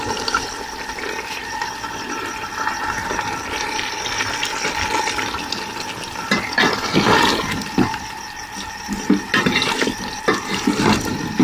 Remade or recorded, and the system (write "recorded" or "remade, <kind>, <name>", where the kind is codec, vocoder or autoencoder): recorded